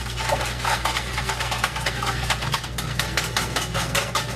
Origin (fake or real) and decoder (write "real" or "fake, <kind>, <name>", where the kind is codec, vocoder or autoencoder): fake, codec, SNAC